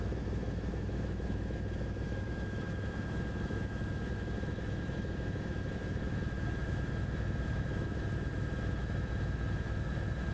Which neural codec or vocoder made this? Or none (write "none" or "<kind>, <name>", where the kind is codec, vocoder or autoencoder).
autoencoder, DAC-VAE